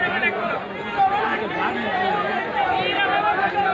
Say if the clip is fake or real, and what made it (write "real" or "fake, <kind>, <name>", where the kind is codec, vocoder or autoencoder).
real